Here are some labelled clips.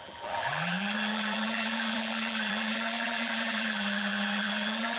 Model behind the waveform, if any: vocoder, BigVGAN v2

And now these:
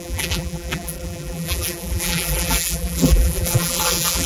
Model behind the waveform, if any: vocoder, BigVGAN v2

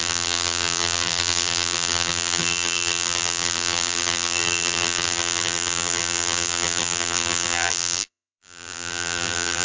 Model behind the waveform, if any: vocoder, BigVGAN v2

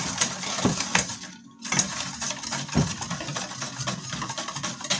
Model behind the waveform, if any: vocoder, BigVGAN v2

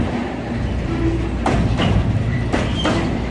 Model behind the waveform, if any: vocoder, BigVGAN v2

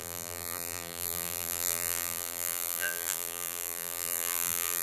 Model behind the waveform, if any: vocoder, BigVGAN v2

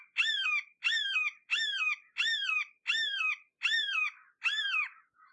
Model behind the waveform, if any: none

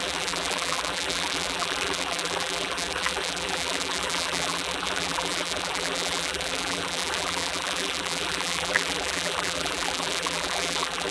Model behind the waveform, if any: vocoder, BigVGAN v2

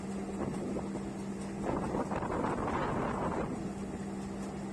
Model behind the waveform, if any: none